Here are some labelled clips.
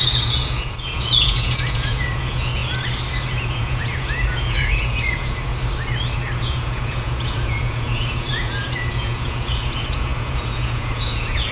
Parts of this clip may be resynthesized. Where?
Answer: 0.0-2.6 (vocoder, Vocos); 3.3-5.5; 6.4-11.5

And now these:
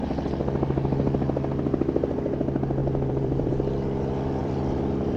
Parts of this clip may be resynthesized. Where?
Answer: 2.8-3.5 (vocoder, BigVGAN v2); 4.4-5.2

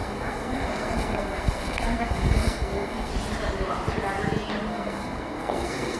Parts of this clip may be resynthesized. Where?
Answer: 0.0-3.1 (codec, SNAC); 4.7-6.0

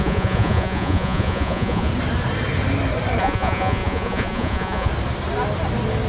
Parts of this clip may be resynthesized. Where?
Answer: 0.0-1.9 (vocoder, Vocos); 3.2-4.9

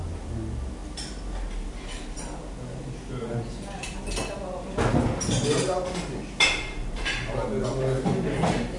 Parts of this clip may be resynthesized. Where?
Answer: none

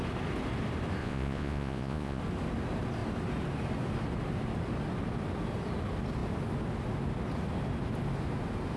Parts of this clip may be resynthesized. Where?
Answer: 1.0-2.2 (vocoder, Vocos)